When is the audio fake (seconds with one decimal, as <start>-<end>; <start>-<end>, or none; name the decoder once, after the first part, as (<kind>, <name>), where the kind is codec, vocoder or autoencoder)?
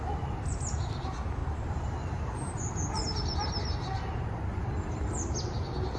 1.4-5.0 (vocoder, BigVGAN v2)